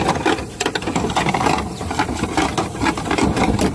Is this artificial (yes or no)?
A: no